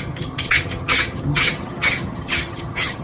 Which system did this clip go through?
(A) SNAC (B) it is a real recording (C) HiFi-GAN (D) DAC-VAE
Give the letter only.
C